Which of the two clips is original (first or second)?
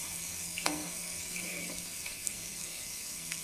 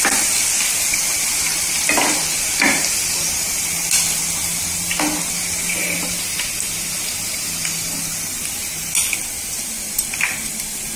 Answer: second